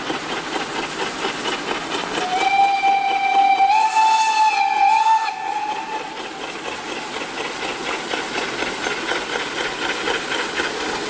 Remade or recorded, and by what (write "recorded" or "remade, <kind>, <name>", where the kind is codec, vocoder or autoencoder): recorded